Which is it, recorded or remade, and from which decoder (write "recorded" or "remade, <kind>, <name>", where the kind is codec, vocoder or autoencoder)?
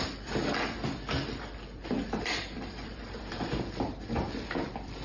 remade, vocoder, BigVGAN v2